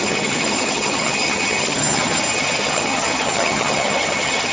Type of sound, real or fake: fake